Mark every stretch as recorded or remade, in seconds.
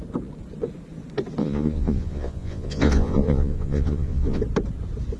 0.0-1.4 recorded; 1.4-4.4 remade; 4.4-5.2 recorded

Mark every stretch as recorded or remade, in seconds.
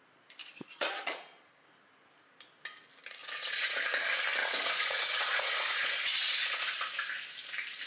0.0-0.4 recorded; 0.4-1.6 remade; 1.6-3.2 recorded; 3.2-3.8 remade; 3.8-4.4 recorded; 4.4-6.9 remade; 6.9-7.9 recorded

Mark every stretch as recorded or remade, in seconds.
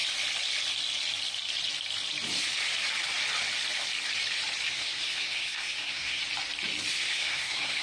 0.0-4.7 recorded; 4.7-6.2 remade; 6.2-6.9 recorded; 6.9-7.8 remade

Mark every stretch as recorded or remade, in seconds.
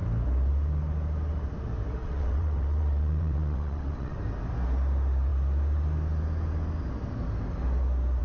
0.0-2.0 recorded; 2.0-4.2 remade; 4.2-8.2 recorded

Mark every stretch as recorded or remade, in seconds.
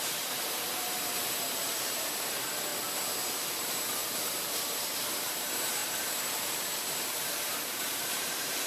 0.0-2.7 remade; 2.7-3.3 recorded; 3.3-8.7 remade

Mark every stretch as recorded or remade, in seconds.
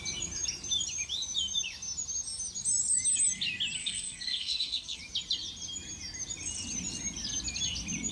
0.0-3.8 recorded; 3.8-5.0 remade; 5.0-8.1 recorded